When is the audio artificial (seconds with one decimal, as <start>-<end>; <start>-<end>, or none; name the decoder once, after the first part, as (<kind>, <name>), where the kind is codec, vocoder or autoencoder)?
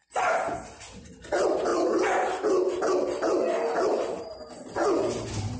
none